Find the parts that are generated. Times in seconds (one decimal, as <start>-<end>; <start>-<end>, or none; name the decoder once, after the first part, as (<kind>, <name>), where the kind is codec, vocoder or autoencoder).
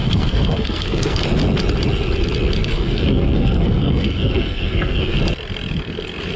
0.0-1.2 (codec, SNAC); 2.6-5.2